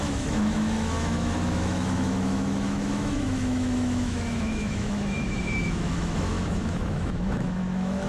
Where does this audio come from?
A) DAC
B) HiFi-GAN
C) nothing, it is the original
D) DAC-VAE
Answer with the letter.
D